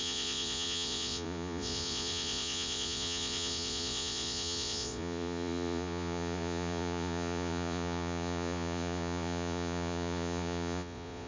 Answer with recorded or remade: remade